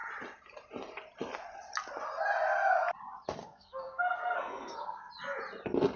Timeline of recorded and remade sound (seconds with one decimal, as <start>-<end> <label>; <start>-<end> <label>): 0.0-3.4 recorded; 3.4-5.1 remade; 5.1-6.0 recorded